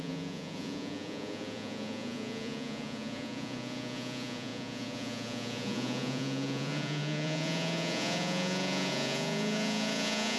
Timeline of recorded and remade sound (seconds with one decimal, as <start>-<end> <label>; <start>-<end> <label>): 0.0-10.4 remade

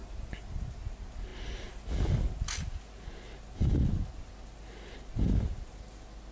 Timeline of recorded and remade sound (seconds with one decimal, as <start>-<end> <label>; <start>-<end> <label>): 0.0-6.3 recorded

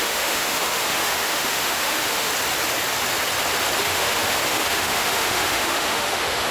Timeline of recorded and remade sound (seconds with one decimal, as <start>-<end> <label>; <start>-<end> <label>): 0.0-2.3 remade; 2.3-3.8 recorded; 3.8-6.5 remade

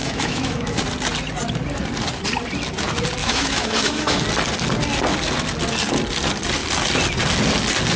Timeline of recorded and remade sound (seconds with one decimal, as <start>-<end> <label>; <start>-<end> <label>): 0.0-0.8 remade; 0.8-3.2 recorded; 3.2-4.2 remade; 4.2-8.0 recorded